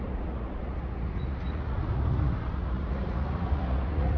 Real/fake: fake